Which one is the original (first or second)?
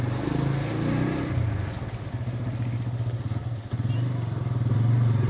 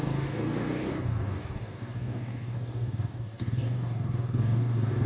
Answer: first